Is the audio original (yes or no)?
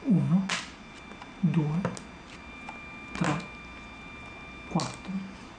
yes